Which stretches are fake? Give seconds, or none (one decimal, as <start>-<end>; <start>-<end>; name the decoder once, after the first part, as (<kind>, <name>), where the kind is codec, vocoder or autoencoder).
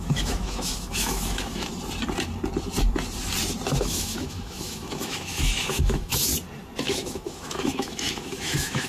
0.0-1.7 (autoencoder, DAC-VAE); 3.8-6.3; 6.8-8.9